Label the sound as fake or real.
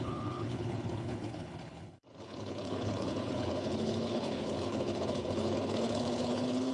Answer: fake